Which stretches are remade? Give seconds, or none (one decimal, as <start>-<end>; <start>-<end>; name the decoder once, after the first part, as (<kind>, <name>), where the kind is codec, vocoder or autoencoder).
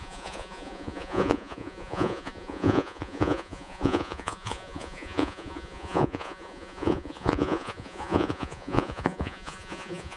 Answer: 0.0-10.2 (vocoder, Vocos)